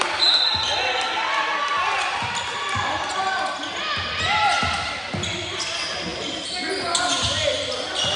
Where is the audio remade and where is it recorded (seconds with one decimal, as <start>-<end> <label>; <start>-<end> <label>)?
0.0-8.2 recorded